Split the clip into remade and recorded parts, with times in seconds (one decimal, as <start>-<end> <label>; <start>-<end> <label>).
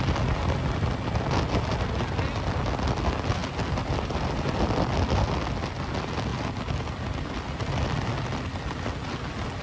0.0-9.6 recorded